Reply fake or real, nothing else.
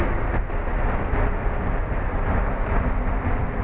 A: real